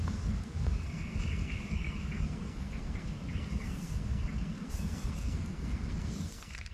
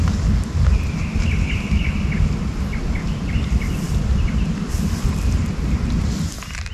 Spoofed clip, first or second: first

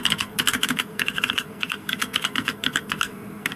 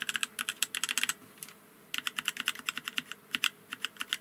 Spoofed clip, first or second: first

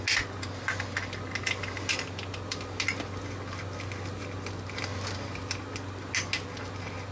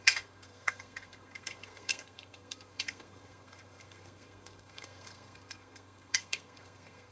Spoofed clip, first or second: second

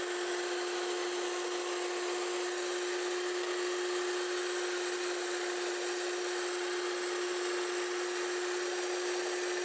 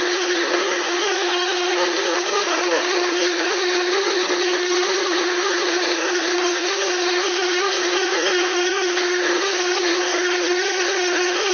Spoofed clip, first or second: second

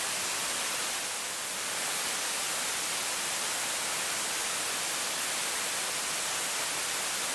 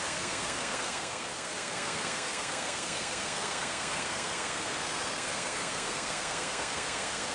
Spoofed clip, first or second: second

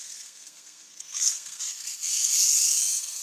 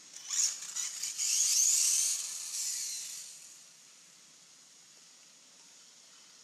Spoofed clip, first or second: first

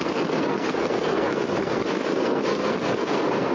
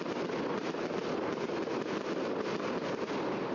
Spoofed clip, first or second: first